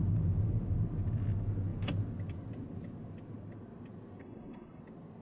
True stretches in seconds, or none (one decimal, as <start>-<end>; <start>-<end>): 0.0-4.2; 4.8-5.2